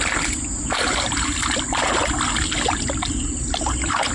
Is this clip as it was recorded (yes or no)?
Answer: yes